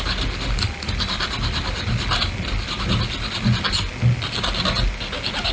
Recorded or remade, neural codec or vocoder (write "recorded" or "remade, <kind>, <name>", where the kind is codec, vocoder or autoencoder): recorded